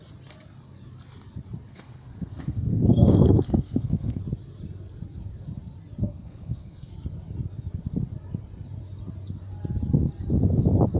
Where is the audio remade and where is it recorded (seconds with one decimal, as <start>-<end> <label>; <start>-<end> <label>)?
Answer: 0.0-1.7 recorded; 1.7-4.2 remade; 4.2-6.0 recorded; 6.0-6.9 remade; 6.9-11.0 recorded